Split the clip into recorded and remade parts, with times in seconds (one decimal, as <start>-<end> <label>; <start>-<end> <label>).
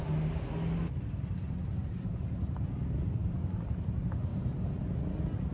0.0-3.2 recorded; 3.2-3.7 remade; 3.7-4.3 recorded; 4.3-4.8 remade; 4.8-5.5 recorded